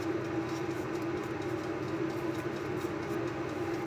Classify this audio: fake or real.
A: real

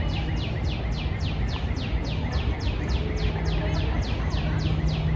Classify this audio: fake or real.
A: real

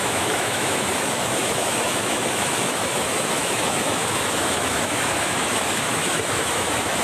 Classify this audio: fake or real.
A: fake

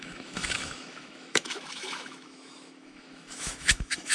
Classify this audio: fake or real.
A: fake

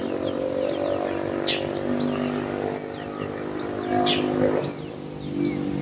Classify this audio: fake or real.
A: real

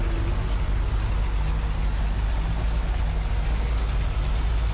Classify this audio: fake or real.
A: real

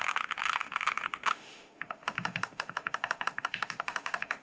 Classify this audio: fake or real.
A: fake